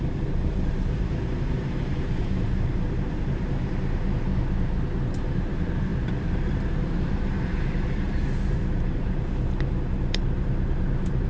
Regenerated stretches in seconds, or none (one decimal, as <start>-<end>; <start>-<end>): 0.0-4.3; 5.0-11.3